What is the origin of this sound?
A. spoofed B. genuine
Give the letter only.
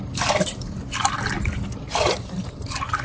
B